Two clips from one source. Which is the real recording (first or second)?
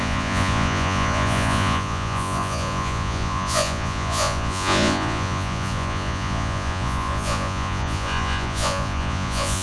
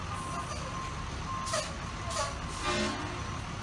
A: second